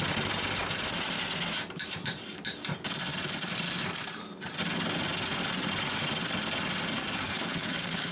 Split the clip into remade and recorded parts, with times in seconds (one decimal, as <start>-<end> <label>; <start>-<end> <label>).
0.0-7.0 recorded; 7.0-8.1 remade